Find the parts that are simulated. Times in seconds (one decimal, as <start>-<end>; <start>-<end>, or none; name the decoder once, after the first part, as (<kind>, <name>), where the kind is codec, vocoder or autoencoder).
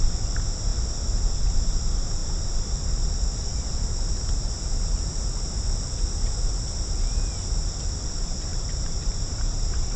8.5-10.0 (vocoder, BigVGAN v2)